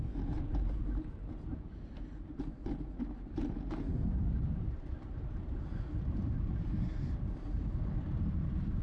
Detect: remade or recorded remade